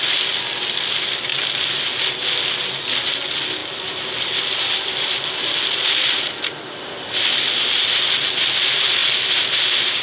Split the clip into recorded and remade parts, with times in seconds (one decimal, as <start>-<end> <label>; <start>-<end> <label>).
0.0-10.0 recorded